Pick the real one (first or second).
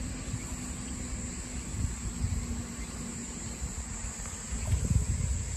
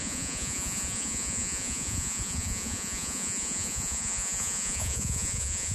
first